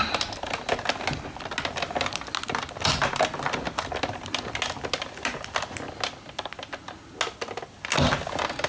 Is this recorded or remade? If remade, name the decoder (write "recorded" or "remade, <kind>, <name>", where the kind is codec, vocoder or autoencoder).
recorded